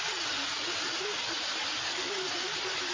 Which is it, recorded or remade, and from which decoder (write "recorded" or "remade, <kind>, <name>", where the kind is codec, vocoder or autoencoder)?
recorded